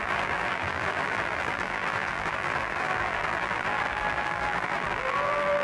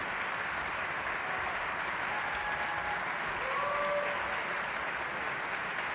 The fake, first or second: first